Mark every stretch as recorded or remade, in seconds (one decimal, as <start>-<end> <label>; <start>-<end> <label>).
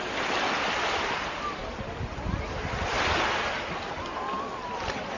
0.0-5.2 recorded